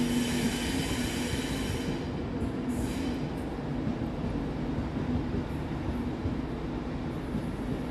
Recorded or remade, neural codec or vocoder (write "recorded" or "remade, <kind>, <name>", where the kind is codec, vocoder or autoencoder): recorded